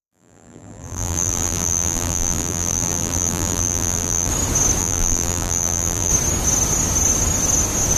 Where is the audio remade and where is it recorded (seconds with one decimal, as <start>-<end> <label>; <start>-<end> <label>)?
0.0-4.3 remade; 4.3-4.8 recorded; 4.8-6.1 remade; 6.1-8.0 recorded